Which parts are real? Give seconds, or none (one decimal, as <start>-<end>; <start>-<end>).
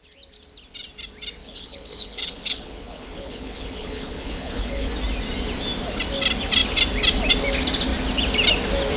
0.0-1.4; 4.9-9.0